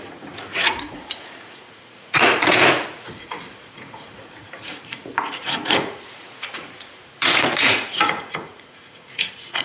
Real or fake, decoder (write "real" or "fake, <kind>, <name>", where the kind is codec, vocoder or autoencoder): fake, vocoder, Vocos